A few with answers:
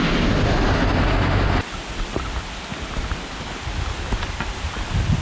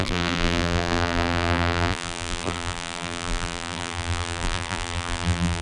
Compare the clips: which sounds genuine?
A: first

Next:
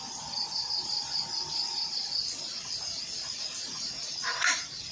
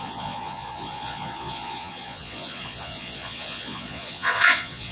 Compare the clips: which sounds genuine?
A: first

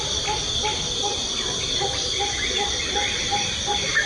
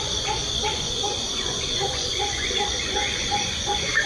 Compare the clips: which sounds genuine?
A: first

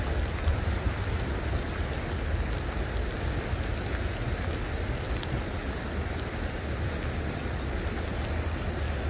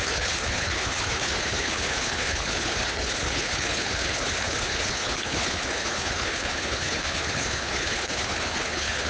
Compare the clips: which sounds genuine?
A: first